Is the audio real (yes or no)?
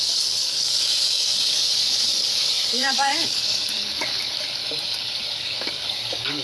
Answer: no